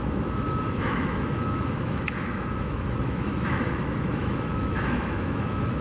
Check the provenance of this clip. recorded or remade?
remade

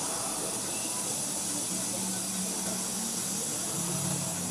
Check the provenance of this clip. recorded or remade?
recorded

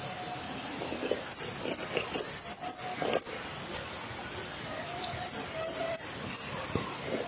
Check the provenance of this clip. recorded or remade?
recorded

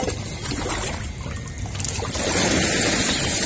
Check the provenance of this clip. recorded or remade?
recorded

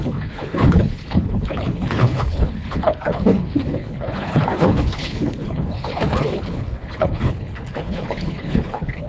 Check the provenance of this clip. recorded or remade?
remade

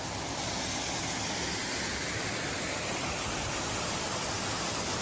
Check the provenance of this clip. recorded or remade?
recorded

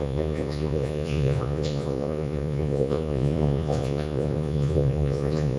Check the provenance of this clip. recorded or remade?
remade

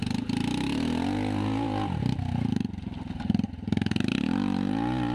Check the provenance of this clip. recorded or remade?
recorded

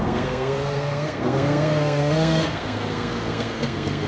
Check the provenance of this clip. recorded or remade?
remade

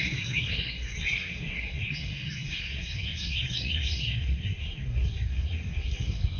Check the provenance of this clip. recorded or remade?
remade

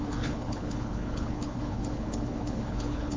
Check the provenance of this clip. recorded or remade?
remade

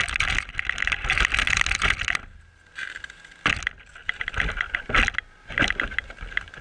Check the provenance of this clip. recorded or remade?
recorded